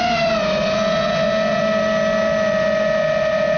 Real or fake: real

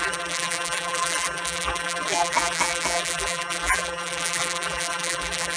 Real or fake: fake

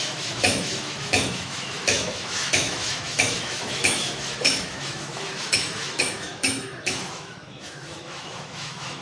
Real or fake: fake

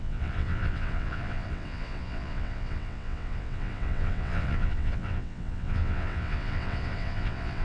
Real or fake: fake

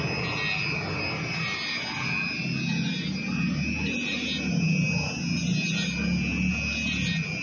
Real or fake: real